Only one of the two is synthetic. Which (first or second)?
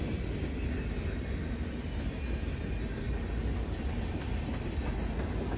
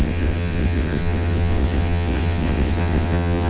second